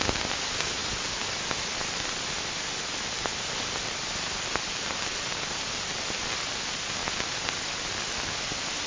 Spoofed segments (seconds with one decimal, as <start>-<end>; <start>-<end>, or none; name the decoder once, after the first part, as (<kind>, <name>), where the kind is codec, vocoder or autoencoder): none